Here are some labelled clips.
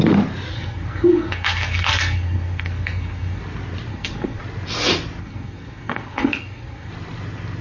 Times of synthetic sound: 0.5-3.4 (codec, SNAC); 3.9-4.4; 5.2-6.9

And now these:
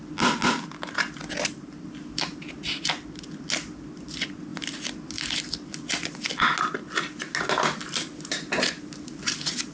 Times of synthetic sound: none

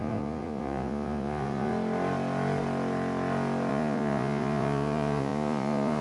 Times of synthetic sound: 0.0-1.7 (vocoder, Vocos); 3.7-6.0